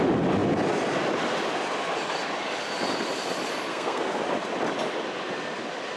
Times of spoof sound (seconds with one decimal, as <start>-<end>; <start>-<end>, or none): 3.7-4.2